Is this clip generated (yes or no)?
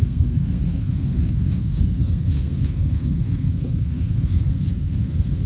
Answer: yes